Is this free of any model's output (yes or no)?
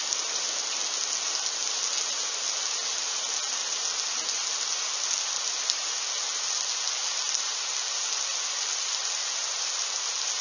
yes